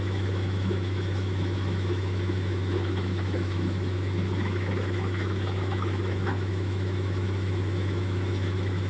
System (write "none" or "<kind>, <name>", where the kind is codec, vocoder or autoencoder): autoencoder, DAC-VAE